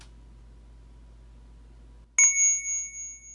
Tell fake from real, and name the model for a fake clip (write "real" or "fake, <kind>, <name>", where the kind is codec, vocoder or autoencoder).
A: real